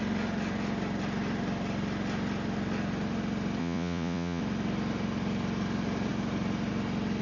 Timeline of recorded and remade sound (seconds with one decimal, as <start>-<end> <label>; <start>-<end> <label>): 0.0-3.6 recorded; 3.6-4.4 remade; 4.4-7.2 recorded